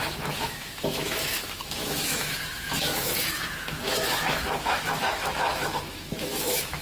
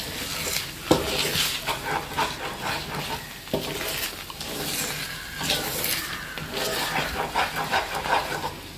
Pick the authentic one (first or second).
second